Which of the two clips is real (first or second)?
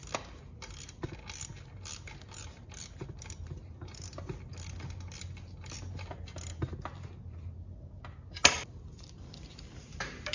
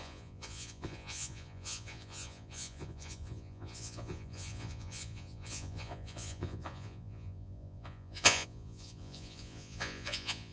first